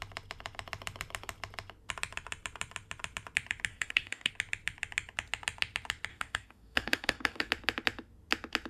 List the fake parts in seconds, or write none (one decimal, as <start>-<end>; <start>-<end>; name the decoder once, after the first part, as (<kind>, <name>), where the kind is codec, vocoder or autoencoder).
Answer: 3.7-4.3 (codec, DAC); 6.1-7.5